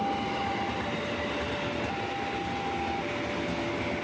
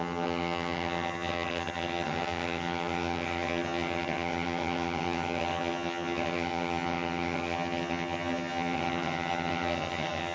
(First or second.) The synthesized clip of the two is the second